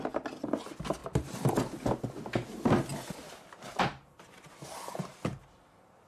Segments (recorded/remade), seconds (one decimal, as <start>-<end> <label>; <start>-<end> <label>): 0.0-6.1 recorded